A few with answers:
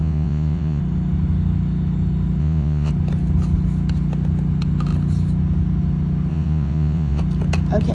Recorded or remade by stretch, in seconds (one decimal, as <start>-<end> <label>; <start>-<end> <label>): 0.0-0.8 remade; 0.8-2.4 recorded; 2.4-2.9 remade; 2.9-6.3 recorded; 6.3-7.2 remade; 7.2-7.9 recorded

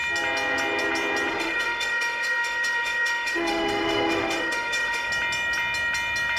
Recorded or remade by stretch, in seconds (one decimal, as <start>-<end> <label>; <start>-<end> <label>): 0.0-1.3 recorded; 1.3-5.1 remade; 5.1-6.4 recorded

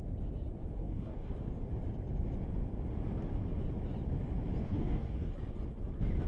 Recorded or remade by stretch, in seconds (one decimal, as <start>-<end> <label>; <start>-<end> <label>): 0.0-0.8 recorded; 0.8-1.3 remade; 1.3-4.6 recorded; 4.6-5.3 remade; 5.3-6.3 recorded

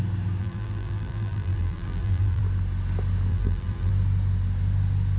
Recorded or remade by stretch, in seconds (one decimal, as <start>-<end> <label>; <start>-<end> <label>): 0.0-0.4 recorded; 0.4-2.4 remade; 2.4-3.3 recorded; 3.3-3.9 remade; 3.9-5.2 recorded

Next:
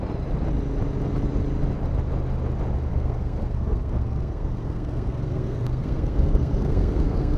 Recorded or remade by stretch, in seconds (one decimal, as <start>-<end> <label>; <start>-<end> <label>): 0.0-2.9 recorded; 2.9-7.4 remade

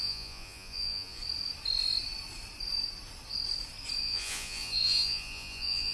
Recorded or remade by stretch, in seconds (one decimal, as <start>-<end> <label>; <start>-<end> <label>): 0.0-1.2 remade; 1.2-4.0 recorded; 4.0-5.9 remade